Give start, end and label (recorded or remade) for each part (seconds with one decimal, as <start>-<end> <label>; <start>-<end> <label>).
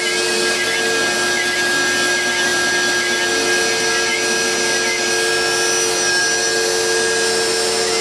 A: 0.0-8.0 recorded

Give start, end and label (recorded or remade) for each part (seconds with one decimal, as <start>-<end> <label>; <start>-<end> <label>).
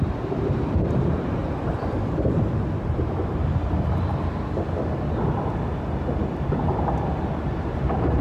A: 0.0-1.4 remade; 1.4-2.0 recorded; 2.0-3.4 remade; 3.4-7.0 recorded; 7.0-8.2 remade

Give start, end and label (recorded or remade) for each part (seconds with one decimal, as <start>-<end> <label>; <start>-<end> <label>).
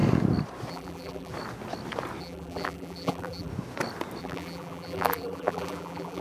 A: 0.0-0.7 recorded; 0.7-1.3 remade; 1.3-2.2 recorded; 2.2-3.5 remade; 3.5-4.2 recorded; 4.2-6.2 remade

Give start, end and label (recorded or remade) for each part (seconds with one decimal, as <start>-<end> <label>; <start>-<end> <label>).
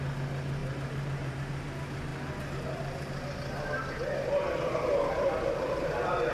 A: 0.0-0.6 recorded; 0.6-1.7 remade; 1.7-6.3 recorded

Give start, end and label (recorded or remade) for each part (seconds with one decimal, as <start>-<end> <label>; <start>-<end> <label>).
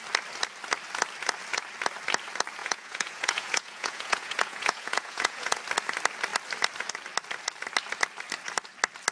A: 0.0-2.6 recorded; 2.6-5.6 remade; 5.6-9.1 recorded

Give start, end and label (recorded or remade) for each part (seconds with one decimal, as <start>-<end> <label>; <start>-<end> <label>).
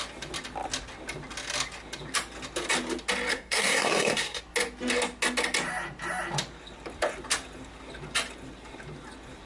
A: 0.0-3.3 recorded; 3.3-4.4 remade; 4.4-9.5 recorded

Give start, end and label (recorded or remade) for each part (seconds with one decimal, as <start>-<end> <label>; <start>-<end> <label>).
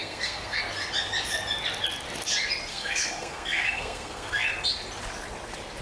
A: 0.0-0.6 remade; 0.6-2.7 recorded; 2.7-4.5 remade; 4.5-5.8 recorded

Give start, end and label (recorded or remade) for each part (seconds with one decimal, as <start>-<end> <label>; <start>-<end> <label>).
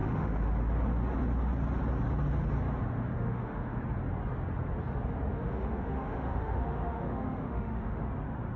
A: 0.0-0.5 remade; 0.5-3.1 recorded; 3.1-3.8 remade; 3.8-5.3 recorded; 5.3-8.1 remade; 8.1-8.6 recorded